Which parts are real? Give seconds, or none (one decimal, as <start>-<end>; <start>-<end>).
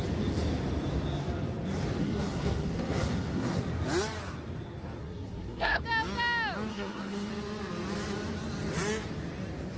0.0-2.0; 3.6-5.0; 5.8-6.7; 7.3-9.8